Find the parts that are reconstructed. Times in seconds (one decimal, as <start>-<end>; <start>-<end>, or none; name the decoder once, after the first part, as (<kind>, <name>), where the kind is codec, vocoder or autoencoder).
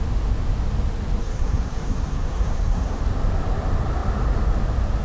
1.2-3.0 (codec, SNAC)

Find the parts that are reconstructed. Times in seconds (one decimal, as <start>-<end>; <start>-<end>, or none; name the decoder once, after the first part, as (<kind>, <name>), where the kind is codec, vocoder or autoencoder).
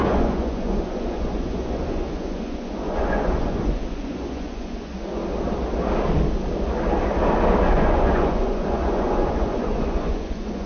0.0-5.2 (vocoder, Vocos); 7.6-10.7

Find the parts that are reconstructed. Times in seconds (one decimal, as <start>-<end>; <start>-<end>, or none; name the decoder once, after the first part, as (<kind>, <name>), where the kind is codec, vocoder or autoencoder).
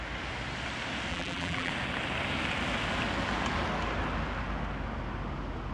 1.1-1.7 (vocoder, BigVGAN v2)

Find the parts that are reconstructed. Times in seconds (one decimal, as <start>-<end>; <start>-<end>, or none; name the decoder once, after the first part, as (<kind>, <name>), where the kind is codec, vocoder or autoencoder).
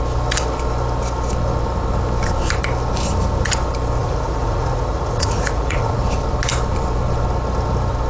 4.0-6.0 (vocoder, Vocos)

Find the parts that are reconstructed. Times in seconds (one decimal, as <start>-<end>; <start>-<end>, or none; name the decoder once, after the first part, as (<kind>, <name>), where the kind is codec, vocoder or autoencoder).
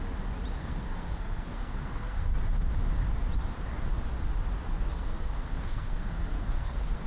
0.6-2.3 (codec, SNAC); 4.9-7.1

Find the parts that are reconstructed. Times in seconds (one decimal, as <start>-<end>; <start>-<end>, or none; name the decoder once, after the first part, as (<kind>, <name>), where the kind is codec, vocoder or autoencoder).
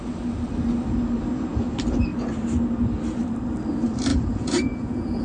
4.1-5.2 (vocoder, Vocos)